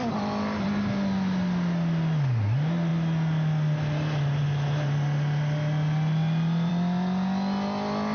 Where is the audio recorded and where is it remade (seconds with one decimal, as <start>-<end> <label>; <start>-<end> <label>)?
0.0-8.1 recorded